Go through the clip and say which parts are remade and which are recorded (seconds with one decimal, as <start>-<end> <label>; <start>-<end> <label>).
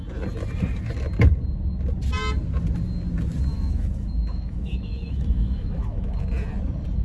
0.0-3.5 recorded; 3.5-6.2 remade; 6.2-7.0 recorded